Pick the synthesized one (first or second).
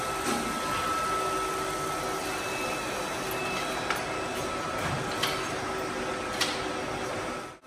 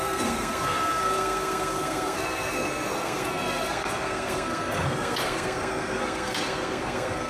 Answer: second